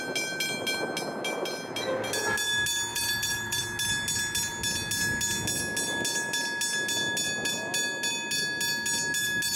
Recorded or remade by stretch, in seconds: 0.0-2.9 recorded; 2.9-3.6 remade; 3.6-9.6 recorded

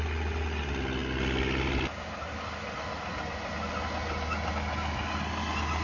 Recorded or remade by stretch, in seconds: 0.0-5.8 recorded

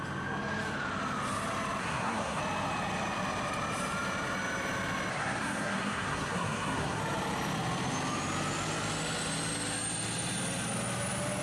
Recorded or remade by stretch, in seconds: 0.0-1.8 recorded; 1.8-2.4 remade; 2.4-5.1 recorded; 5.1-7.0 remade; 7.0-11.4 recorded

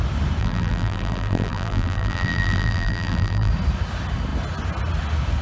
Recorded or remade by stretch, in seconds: 0.0-0.4 recorded; 0.4-3.5 remade; 3.5-5.4 recorded

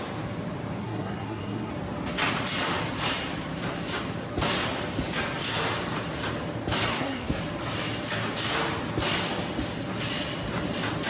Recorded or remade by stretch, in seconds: 0.0-0.8 recorded; 0.8-1.7 remade; 1.7-6.9 recorded; 6.9-7.4 remade; 7.4-11.1 recorded